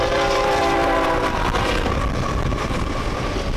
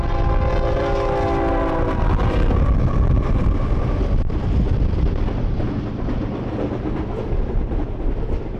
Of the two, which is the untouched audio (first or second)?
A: second